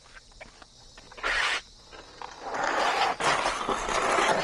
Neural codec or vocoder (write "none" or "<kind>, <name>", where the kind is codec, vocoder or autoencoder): none